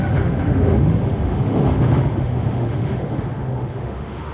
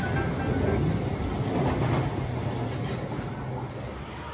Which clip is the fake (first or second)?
first